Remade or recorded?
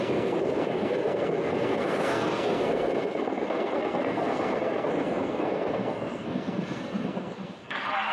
remade